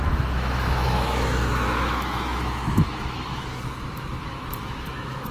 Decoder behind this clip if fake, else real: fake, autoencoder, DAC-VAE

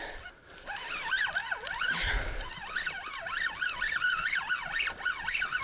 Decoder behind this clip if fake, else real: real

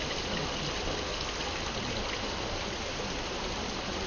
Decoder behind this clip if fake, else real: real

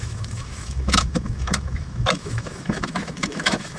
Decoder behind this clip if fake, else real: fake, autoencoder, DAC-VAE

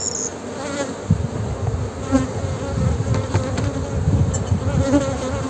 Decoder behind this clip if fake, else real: real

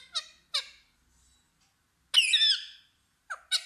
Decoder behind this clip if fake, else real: real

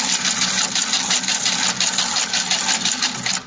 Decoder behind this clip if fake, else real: real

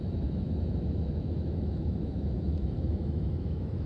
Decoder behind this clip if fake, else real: fake, autoencoder, DAC-VAE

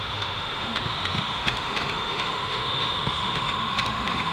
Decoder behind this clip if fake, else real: fake, autoencoder, DAC-VAE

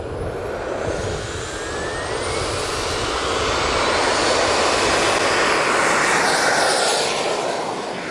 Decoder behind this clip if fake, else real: real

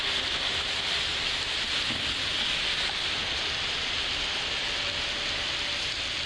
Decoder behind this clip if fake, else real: real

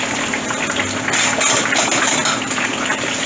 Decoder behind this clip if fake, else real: real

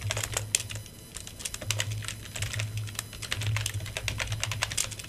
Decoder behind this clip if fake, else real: real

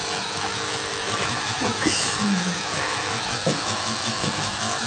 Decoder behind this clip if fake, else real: fake, autoencoder, DAC-VAE